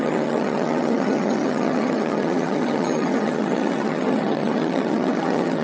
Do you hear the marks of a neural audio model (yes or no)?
yes